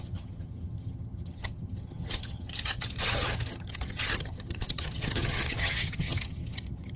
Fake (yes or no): yes